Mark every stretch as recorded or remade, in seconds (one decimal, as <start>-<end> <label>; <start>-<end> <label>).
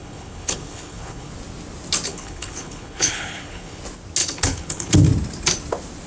0.0-1.3 remade; 1.3-2.1 recorded; 2.1-3.8 remade; 3.8-4.2 recorded; 4.2-4.9 remade; 4.9-6.1 recorded